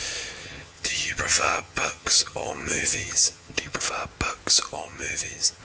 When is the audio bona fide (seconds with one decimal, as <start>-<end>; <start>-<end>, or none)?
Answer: 0.0-0.4; 3.8-4.7